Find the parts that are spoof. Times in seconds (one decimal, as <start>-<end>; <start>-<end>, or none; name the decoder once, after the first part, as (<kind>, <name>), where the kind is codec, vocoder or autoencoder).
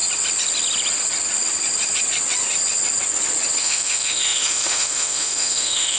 3.6-6.0 (autoencoder, DAC-VAE)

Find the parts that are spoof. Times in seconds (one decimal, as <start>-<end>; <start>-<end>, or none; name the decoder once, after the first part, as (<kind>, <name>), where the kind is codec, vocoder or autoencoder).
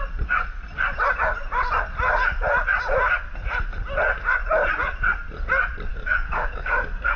5.9-7.2 (codec, DAC)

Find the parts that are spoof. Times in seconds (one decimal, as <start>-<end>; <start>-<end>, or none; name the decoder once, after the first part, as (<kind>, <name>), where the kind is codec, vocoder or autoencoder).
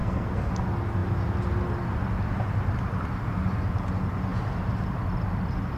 0.0-0.5 (codec, SNAC)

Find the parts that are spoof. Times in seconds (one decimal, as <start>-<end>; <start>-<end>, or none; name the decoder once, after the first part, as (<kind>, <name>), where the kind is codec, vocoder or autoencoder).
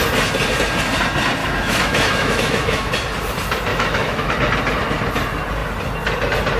1.4-2.9 (autoencoder, DAC-VAE); 3.7-4.3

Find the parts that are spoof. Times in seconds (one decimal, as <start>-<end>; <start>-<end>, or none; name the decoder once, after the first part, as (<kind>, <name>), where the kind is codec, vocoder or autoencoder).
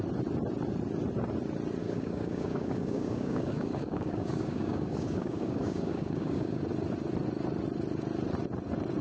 1.8-6.6 (codec, DAC)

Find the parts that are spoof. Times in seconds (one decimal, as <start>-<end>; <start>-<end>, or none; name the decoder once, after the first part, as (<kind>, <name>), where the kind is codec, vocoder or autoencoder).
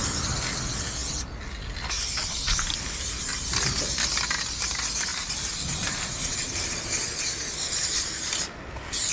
5.1-6.8 (vocoder, BigVGAN v2)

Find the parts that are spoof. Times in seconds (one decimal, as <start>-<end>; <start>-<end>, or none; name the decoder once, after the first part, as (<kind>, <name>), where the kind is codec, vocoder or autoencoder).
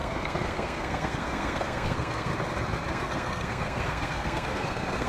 0.0-2.3 (codec, SNAC); 2.9-5.1